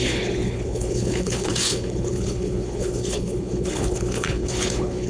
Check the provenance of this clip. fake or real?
fake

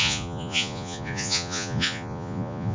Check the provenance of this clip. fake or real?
fake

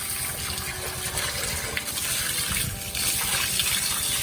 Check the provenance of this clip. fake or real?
real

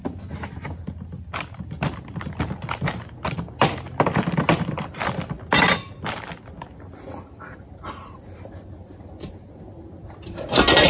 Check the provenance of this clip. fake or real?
real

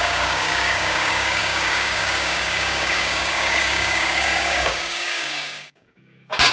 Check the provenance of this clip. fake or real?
fake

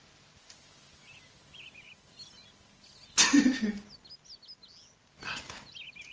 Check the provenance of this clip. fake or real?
real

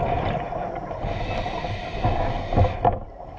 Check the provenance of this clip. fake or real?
real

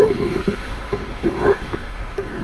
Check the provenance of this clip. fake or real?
fake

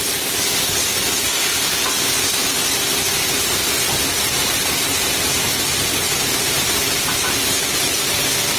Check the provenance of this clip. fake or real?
real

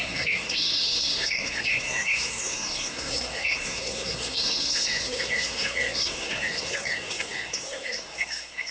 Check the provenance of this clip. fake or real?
fake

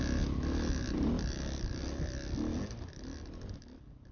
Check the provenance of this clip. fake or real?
real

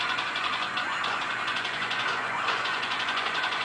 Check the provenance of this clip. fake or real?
fake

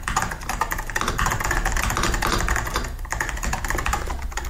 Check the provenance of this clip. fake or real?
real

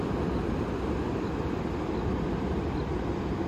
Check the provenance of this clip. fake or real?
real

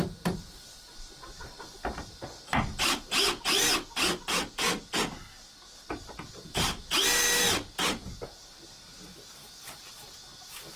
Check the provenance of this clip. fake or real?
real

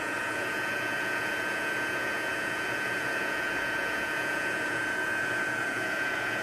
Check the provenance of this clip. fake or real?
fake